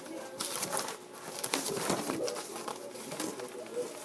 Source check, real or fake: real